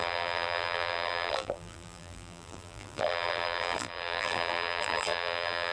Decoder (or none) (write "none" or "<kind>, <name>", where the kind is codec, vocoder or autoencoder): vocoder, BigVGAN v2